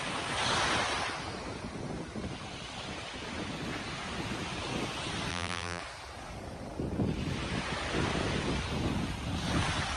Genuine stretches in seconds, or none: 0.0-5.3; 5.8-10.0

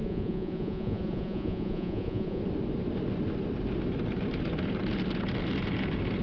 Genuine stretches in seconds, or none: 2.4-6.2

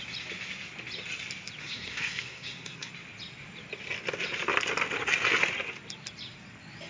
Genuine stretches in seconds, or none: 0.0-1.6; 2.9-6.9

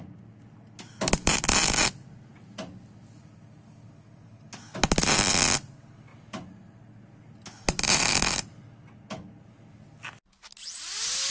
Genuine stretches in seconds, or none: 0.0-11.3

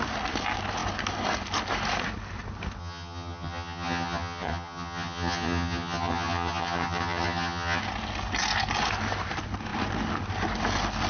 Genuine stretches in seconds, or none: 0.0-2.8; 7.8-11.1